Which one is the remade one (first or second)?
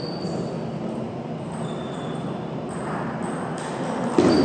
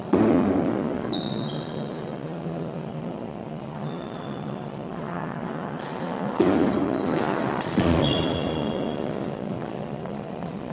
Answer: second